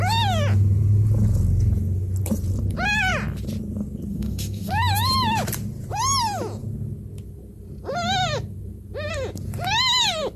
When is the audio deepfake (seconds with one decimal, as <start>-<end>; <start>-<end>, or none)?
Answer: 4.1-4.7